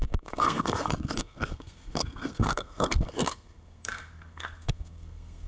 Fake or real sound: fake